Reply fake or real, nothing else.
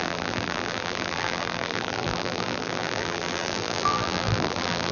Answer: fake